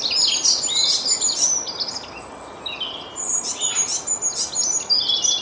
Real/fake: real